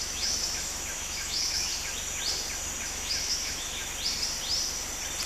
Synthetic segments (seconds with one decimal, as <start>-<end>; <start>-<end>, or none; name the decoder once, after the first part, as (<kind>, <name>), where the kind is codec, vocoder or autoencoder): 0.0-1.7 (autoencoder, DAC-VAE); 2.8-3.8